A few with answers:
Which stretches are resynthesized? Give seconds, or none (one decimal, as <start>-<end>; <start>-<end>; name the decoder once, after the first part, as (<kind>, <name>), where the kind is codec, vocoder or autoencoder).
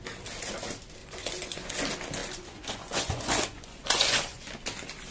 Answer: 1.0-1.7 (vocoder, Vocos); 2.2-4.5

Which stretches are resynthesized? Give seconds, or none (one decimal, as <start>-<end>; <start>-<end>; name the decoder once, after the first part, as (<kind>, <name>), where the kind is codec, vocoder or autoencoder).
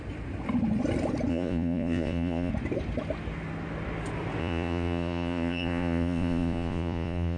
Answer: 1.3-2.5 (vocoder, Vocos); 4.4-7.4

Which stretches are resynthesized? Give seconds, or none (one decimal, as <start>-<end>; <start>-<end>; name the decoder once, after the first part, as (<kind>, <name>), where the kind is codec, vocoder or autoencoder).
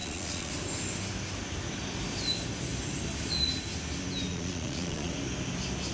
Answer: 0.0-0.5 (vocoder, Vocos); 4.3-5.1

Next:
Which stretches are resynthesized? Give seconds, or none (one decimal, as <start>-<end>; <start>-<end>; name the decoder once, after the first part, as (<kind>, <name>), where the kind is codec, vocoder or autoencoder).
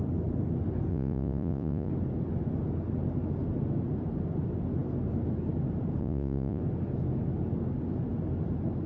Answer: 0.9-1.9 (vocoder, Vocos); 6.0-6.6